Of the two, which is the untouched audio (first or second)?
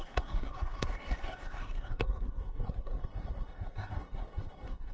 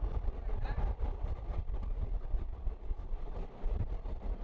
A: second